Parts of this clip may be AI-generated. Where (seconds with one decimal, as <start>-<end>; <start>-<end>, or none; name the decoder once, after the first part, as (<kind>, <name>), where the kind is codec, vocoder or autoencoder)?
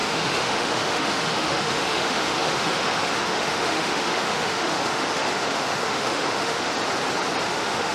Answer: 0.0-6.7 (autoencoder, DAC-VAE); 7.4-7.9